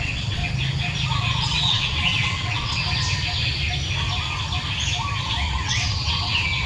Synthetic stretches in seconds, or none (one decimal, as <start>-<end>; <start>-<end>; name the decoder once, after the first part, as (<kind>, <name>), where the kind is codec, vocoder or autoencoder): 0.0-0.4 (vocoder, WaveNeXt); 1.2-2.8; 5.3-6.7